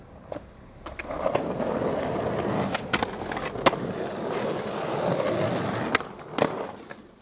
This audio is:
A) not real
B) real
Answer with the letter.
B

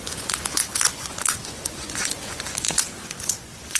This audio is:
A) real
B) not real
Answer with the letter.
B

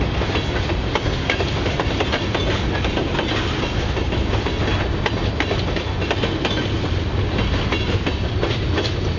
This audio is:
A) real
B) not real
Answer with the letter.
A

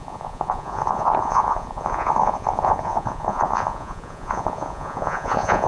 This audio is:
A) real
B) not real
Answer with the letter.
B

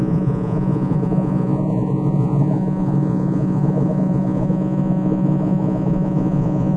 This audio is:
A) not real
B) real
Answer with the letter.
A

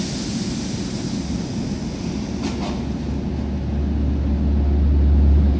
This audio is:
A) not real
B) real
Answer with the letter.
B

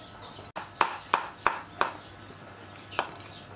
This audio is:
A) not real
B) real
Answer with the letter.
B